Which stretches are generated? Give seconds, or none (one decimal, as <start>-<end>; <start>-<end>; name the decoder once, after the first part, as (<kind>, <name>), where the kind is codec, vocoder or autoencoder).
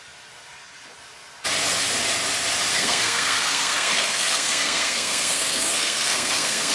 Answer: 2.7-6.7 (codec, SNAC)